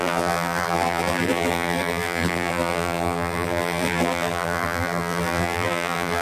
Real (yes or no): no